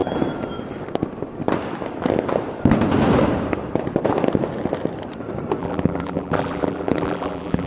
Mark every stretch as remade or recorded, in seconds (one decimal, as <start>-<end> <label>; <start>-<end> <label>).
0.0-5.6 recorded; 5.6-7.7 remade